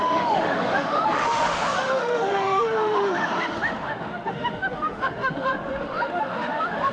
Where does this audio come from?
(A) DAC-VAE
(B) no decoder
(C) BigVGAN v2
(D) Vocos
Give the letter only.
A